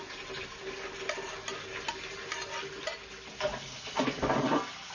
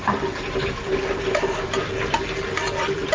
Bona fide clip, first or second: first